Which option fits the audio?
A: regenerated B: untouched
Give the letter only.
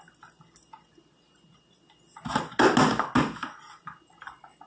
B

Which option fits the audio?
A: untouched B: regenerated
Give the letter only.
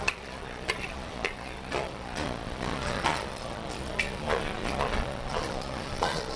B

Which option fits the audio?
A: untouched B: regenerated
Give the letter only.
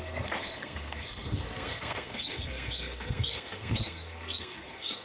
B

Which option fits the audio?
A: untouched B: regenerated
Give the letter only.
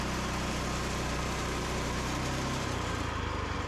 B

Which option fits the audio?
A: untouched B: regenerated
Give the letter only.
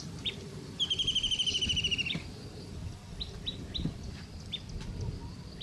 A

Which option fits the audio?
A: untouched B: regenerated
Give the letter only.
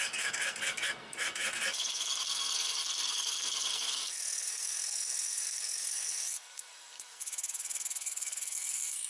B